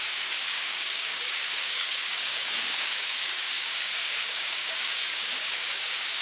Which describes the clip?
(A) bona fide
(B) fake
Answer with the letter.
B